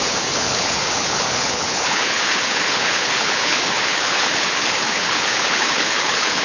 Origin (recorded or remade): remade